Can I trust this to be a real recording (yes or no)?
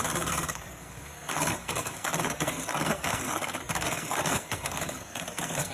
no